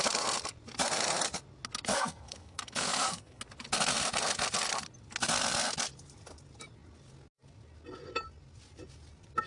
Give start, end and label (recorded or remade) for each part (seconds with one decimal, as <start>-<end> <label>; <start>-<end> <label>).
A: 0.0-1.9 recorded; 1.9-3.4 remade; 3.4-9.5 recorded